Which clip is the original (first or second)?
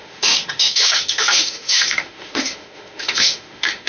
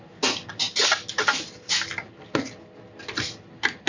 second